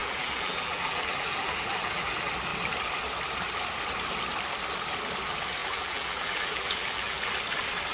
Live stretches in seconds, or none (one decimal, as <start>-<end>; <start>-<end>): 2.1-5.6; 7.3-7.9